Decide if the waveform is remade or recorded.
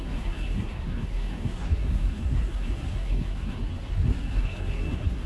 remade